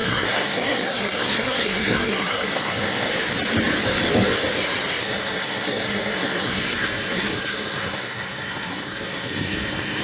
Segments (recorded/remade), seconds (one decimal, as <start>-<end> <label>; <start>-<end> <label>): 0.0-3.1 remade; 3.1-5.0 recorded; 5.0-10.0 remade